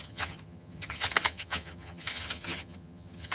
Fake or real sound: fake